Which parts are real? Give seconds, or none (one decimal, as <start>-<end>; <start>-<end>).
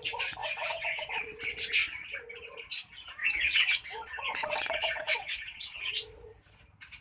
0.0-0.4; 1.1-3.2; 5.9-7.0